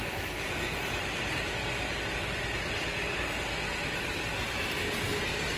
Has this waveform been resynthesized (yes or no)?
no